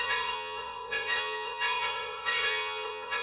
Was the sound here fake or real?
fake